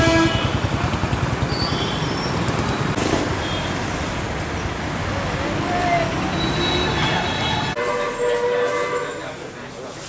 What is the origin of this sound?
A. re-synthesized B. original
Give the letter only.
B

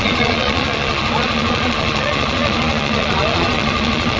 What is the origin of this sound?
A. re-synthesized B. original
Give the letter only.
A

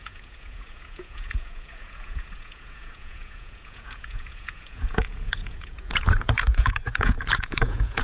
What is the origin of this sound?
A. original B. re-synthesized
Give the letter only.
B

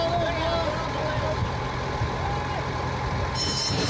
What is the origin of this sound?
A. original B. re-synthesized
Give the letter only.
A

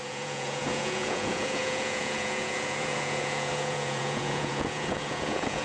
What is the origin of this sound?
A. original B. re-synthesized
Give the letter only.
B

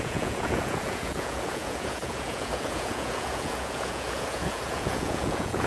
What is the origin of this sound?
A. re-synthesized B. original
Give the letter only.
A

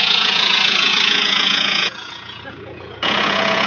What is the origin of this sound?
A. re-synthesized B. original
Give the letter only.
A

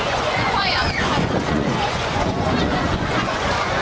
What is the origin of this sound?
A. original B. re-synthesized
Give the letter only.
B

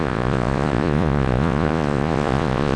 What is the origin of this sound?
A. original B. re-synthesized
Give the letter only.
B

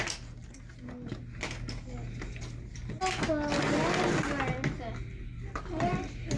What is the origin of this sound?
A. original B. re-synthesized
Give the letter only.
A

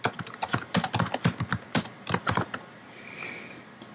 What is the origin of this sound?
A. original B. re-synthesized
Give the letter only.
A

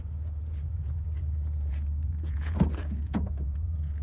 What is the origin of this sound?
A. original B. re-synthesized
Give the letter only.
B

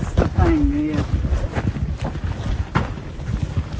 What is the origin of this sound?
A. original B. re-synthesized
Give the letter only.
A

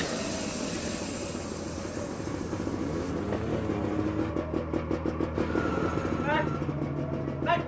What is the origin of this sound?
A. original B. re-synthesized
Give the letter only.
A